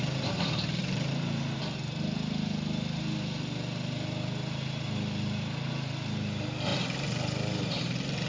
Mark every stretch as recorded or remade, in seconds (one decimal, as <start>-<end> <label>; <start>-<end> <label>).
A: 0.0-0.8 recorded; 0.8-5.7 remade; 5.7-6.7 recorded; 6.7-8.3 remade

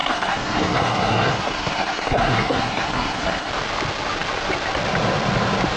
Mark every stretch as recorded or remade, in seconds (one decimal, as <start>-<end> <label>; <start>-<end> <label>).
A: 0.0-3.5 remade; 3.5-5.8 recorded